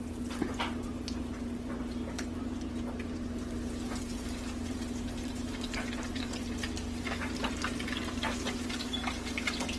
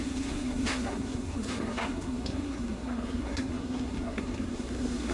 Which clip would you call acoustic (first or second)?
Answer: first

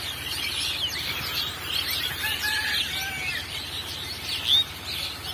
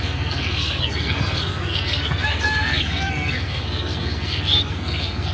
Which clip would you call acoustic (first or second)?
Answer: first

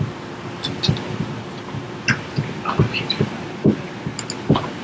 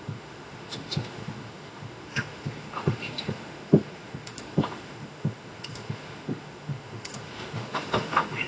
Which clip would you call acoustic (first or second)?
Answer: first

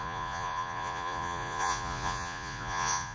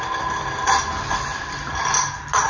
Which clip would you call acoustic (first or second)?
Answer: second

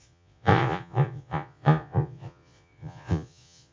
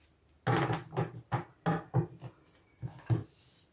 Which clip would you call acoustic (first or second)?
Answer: second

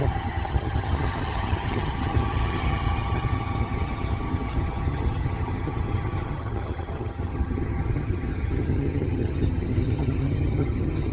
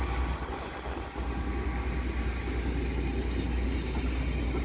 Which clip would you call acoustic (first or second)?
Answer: second